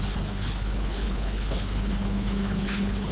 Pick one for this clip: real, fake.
fake